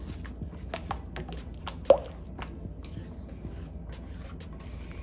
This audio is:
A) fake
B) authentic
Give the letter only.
B